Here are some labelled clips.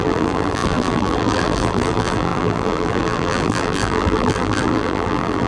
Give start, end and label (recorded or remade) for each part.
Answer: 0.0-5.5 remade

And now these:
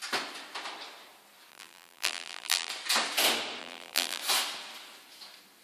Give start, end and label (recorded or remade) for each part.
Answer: 0.0-1.5 recorded; 1.5-2.7 remade; 2.7-3.6 recorded; 3.6-4.2 remade; 4.2-5.6 recorded

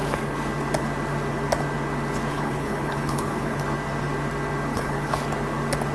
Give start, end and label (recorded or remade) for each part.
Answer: 0.0-2.3 recorded; 2.3-3.6 remade; 3.6-4.7 recorded; 4.7-5.2 remade; 5.2-5.9 recorded

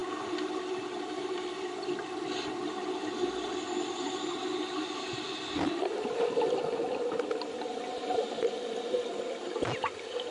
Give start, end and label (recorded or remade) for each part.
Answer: 0.0-10.3 recorded